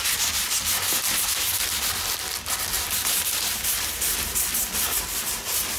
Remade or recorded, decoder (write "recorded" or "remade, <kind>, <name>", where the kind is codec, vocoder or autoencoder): remade, vocoder, BigVGAN v2